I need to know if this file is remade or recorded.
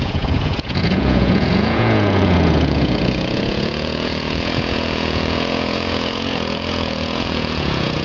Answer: remade